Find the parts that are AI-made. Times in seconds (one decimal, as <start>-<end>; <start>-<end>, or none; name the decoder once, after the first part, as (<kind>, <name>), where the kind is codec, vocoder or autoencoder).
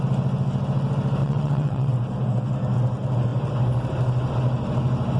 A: 1.2-1.9 (vocoder, WaveNeXt)